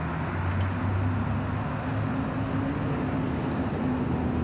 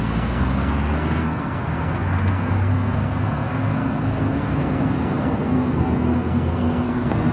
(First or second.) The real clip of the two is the first